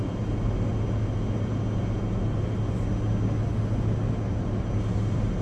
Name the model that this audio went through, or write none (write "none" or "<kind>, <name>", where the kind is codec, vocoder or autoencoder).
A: none